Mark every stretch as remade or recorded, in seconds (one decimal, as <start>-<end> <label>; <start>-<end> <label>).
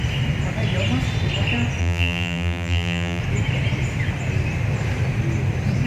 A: 0.0-1.8 recorded; 1.8-3.2 remade; 3.2-5.9 recorded